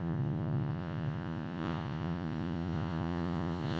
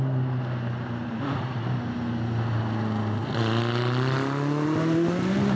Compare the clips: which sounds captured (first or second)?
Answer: second